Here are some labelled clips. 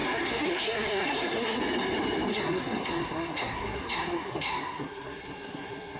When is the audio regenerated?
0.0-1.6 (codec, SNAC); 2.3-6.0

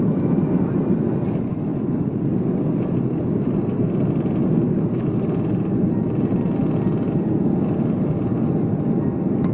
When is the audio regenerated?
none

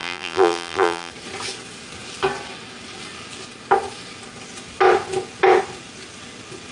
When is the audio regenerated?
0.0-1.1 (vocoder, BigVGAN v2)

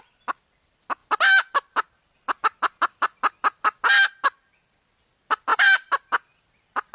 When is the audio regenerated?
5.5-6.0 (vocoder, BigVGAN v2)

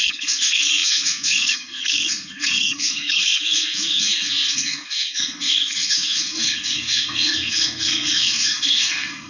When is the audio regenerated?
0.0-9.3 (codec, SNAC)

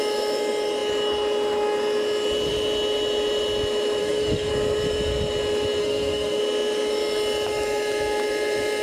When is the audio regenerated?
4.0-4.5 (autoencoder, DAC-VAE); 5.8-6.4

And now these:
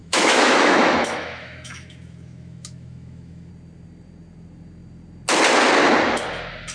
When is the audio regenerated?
0.0-3.5 (autoencoder, DAC-VAE)

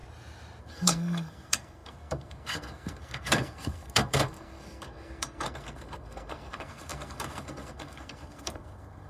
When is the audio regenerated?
0.6-9.1 (codec, SNAC)